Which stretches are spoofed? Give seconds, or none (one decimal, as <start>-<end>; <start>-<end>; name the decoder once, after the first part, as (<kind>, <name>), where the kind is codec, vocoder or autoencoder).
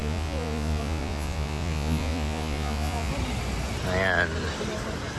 0.0-3.1 (vocoder, Vocos)